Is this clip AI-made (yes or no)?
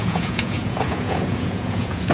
yes